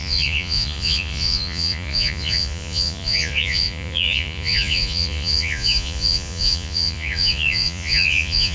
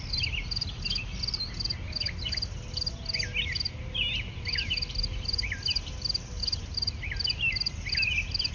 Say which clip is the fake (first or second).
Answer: first